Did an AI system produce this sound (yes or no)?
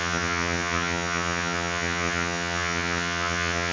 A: yes